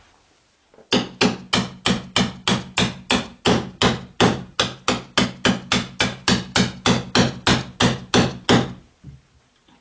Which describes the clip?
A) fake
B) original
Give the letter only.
B